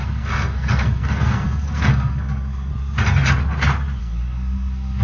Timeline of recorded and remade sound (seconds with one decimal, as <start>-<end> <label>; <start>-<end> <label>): 0.0-2.7 remade; 2.7-4.0 recorded; 4.0-5.0 remade